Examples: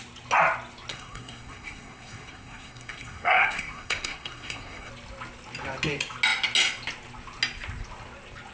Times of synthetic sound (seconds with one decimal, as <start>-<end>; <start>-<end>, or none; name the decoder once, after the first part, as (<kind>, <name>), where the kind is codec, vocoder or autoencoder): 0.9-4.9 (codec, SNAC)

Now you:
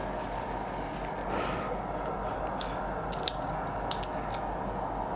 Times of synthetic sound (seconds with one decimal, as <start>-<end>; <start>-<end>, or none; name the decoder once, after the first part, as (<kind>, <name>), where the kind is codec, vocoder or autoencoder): none

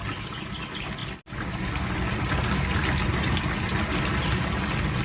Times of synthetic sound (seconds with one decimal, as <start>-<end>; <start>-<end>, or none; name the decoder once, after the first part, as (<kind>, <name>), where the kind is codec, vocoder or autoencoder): none

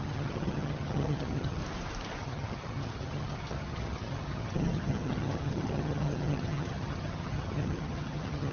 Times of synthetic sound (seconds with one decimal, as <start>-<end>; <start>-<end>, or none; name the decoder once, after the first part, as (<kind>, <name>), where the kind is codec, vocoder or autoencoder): 0.0-1.6 (vocoder, HiFi-GAN); 2.2-8.5

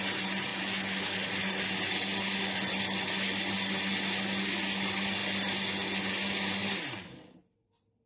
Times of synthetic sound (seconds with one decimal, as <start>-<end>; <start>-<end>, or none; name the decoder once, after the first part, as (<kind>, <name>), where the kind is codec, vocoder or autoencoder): none

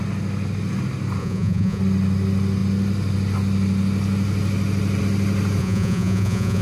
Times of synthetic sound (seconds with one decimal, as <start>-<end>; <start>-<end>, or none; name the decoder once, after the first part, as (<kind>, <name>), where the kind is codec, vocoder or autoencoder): 1.2-1.8 (vocoder, Vocos); 5.6-6.6

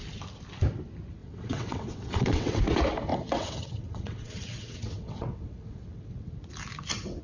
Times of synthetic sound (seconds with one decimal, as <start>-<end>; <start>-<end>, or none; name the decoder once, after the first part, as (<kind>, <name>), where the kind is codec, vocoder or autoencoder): 1.2-2.6 (vocoder, WaveNeXt); 3.1-6.3